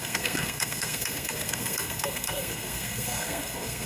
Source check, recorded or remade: remade